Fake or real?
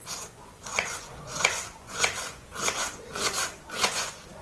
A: fake